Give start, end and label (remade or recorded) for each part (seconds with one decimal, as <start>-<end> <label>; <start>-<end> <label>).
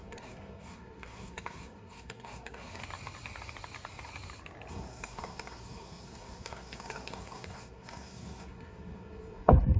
0.0-2.8 remade; 2.8-4.7 recorded; 4.7-9.8 remade